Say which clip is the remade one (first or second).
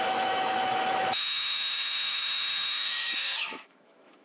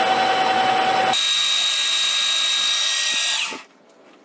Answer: first